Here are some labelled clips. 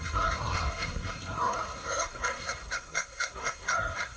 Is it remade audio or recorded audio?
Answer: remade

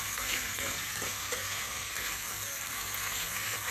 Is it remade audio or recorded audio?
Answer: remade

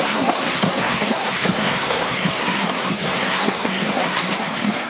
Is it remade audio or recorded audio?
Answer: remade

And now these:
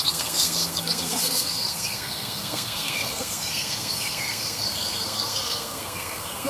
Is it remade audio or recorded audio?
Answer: remade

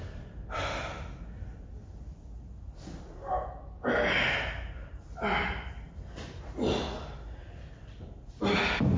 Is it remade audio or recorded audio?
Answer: recorded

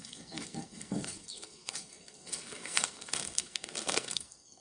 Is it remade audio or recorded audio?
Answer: remade